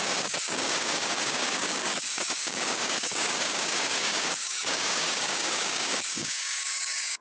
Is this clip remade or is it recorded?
remade